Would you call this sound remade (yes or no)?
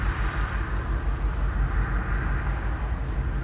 no